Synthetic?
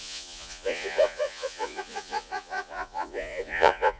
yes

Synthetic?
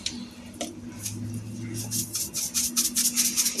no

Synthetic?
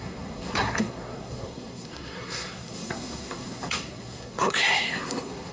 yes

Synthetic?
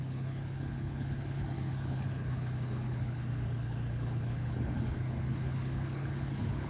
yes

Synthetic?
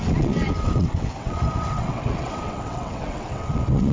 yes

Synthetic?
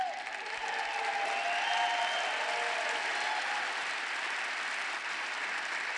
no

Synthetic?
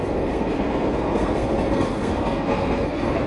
yes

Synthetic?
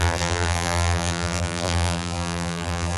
yes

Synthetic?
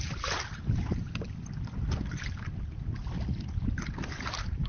no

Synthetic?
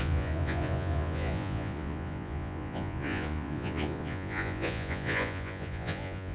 yes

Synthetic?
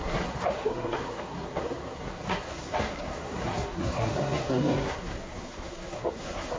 yes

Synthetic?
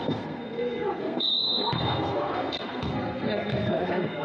yes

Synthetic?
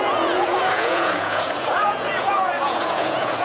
yes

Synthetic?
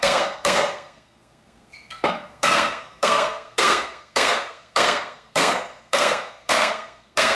yes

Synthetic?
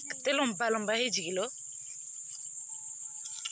no